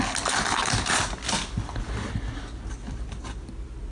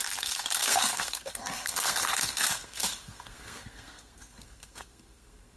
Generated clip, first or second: second